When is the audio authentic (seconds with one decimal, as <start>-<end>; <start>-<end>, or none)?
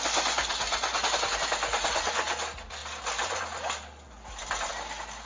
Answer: 0.0-5.3